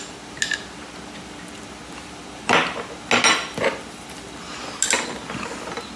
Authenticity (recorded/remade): recorded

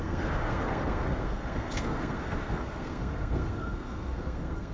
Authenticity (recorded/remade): remade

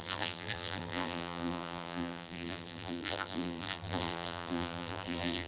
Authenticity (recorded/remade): remade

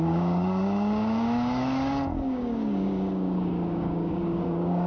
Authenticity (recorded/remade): remade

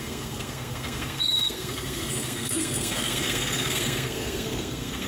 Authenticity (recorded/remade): remade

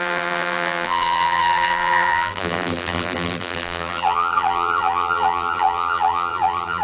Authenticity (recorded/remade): remade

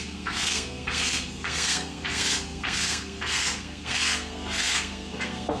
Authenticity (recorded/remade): remade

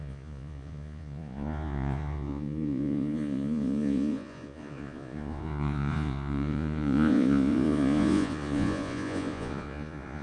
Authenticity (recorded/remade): remade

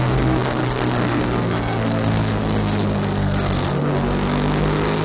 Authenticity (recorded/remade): remade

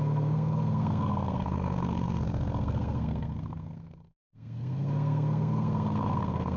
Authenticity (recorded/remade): remade